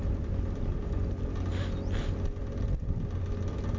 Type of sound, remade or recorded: recorded